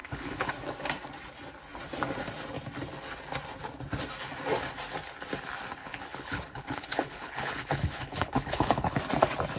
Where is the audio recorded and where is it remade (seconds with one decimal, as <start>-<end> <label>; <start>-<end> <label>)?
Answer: 0.0-0.5 remade; 0.5-5.8 recorded; 5.8-9.0 remade; 9.0-9.6 recorded

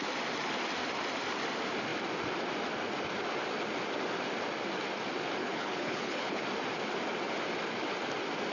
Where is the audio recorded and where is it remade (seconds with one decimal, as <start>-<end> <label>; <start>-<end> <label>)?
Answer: 0.0-5.4 recorded; 5.4-6.4 remade; 6.4-8.5 recorded

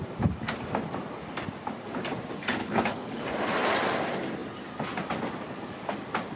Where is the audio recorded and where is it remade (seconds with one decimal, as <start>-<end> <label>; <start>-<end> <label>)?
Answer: 0.0-2.6 recorded; 2.6-3.2 remade; 3.2-6.4 recorded

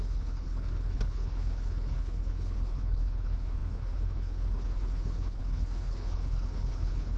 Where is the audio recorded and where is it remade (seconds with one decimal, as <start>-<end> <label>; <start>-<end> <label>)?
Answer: 0.0-7.2 remade

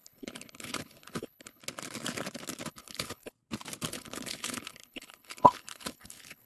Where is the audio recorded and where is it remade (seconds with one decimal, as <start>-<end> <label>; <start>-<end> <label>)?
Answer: 0.0-1.6 remade; 1.6-2.7 recorded; 2.7-3.3 remade; 3.3-3.9 recorded; 3.9-6.5 remade

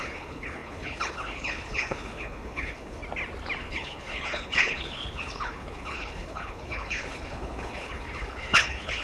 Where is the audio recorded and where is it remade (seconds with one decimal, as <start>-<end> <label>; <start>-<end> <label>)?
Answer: 0.0-3.0 remade; 3.0-3.6 recorded; 3.6-9.0 remade

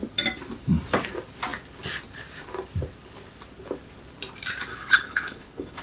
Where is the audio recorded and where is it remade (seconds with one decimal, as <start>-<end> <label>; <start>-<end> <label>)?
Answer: 0.0-4.7 recorded; 4.7-5.8 remade

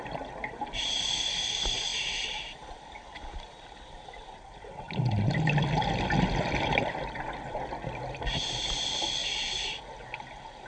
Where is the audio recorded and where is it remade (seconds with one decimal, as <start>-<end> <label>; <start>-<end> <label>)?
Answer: 0.0-10.7 recorded